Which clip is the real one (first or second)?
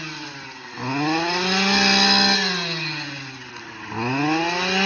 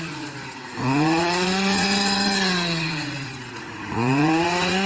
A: first